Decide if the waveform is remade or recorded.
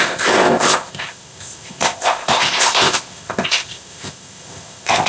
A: remade